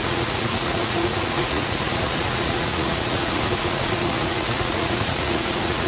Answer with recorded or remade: remade